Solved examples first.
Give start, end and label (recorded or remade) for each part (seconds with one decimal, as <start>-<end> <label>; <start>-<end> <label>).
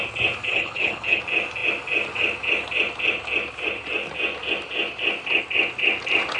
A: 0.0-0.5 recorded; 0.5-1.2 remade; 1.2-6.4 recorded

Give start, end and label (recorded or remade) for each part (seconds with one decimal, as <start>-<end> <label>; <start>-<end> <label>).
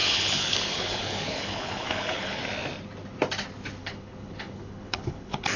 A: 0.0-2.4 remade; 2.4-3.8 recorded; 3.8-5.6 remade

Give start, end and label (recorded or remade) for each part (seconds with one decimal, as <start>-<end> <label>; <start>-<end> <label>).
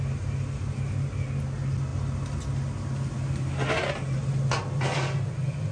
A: 0.0-5.7 recorded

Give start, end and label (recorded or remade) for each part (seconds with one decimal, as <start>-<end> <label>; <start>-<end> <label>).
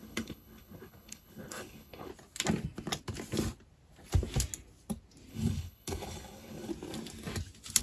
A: 0.0-2.1 remade; 2.1-5.3 recorded; 5.3-6.7 remade; 6.7-7.8 recorded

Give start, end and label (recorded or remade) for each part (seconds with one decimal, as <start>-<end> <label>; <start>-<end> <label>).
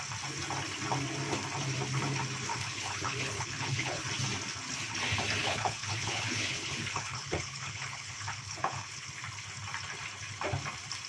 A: 0.0-2.5 recorded; 2.5-4.0 remade; 4.0-5.4 recorded; 5.4-9.1 remade; 9.1-11.1 recorded